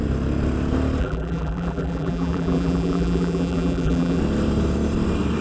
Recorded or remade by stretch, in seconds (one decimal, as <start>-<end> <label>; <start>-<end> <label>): 0.0-1.0 recorded; 1.0-4.2 remade; 4.2-5.4 recorded